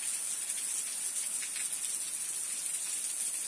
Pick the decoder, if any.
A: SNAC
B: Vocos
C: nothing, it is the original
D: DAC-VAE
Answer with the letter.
C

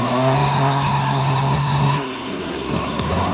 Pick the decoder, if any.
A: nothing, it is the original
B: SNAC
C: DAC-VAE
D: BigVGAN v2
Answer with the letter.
B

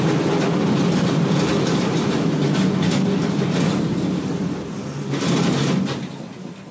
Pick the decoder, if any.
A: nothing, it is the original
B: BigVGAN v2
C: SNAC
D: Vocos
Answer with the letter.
A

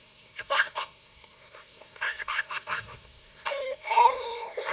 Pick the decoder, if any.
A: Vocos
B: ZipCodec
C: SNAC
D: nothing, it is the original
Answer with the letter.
C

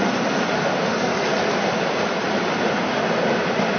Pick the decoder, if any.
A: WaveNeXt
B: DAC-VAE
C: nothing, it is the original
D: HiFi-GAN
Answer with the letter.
C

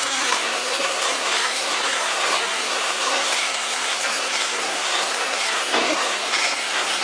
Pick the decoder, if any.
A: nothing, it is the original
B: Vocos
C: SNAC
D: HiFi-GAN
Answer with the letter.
C